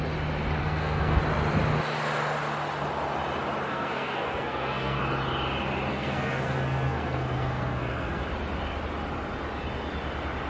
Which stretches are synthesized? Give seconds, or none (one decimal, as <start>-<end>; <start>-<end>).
0.6-1.2; 3.7-5.0; 5.9-8.2